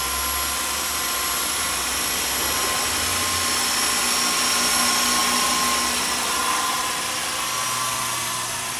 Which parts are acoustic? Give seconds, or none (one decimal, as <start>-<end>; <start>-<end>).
0.0-8.8